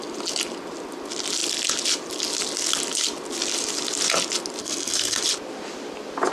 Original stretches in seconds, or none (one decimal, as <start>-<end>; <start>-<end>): 0.0-4.6; 5.2-6.3